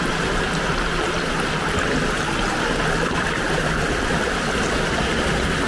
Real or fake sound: real